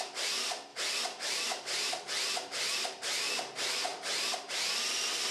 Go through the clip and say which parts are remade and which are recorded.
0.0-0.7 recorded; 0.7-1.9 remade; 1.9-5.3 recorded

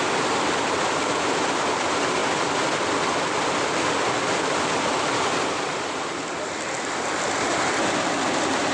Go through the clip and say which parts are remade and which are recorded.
0.0-2.2 remade; 2.2-3.2 recorded; 3.2-8.7 remade